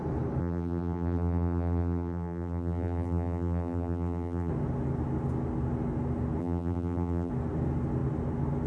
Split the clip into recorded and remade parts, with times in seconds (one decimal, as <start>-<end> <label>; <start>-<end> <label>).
0.0-0.4 recorded; 0.4-4.5 remade; 4.5-6.4 recorded; 6.4-7.3 remade; 7.3-8.7 recorded